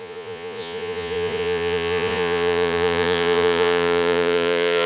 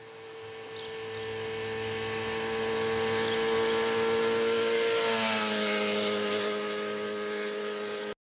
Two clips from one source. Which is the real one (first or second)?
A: second